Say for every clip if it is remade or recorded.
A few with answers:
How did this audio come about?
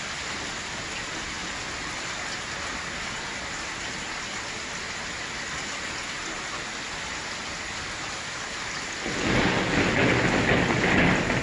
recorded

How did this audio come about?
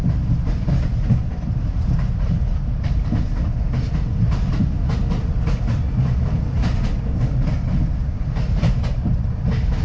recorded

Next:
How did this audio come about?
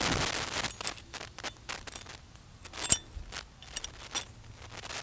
recorded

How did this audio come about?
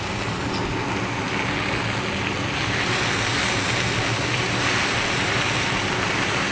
recorded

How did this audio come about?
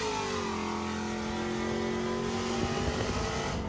recorded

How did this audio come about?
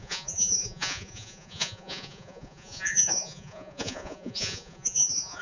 remade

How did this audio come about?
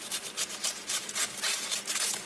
recorded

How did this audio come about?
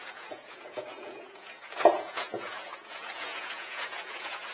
remade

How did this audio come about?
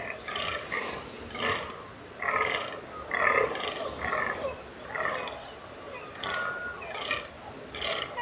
recorded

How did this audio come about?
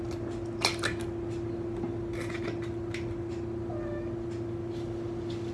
recorded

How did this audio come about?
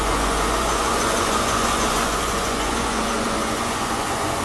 remade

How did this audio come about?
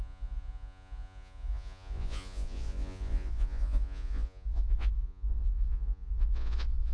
remade